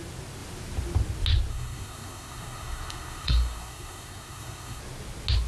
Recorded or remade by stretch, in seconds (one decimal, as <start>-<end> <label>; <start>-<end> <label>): 0.0-1.5 recorded; 1.5-4.8 remade; 4.8-5.5 recorded

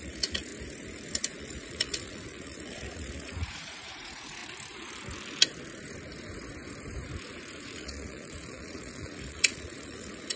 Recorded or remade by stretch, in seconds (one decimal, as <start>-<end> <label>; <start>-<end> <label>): 0.0-0.5 remade; 0.5-1.4 recorded; 1.4-4.4 remade; 4.4-7.6 recorded; 7.6-10.4 remade

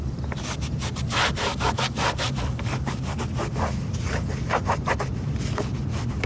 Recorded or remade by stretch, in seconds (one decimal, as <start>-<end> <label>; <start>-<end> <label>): 0.0-1.5 recorded; 1.5-3.1 remade; 3.1-6.3 recorded

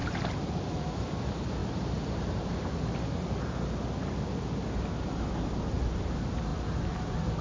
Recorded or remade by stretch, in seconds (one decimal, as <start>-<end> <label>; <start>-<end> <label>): 0.0-7.4 recorded

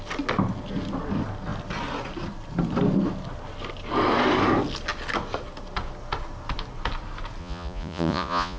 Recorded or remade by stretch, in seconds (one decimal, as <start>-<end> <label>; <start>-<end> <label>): 0.0-7.4 recorded; 7.4-8.6 remade

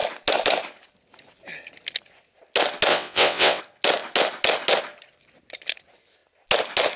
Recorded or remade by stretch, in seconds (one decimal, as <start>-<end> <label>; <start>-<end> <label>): 0.0-2.9 recorded; 2.9-3.6 remade; 3.6-7.0 recorded